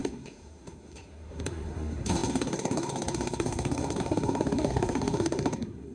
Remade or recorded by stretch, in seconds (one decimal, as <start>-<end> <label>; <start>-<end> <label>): 0.0-5.9 remade